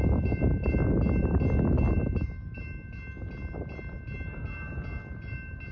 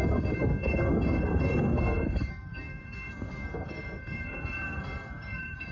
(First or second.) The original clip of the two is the first